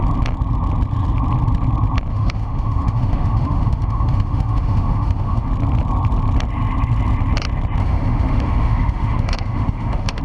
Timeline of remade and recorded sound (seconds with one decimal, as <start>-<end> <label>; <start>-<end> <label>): 0.0-2.1 recorded; 2.1-5.5 remade; 5.5-7.8 recorded; 7.8-10.2 remade